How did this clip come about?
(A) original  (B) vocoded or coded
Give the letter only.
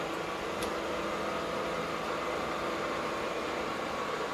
A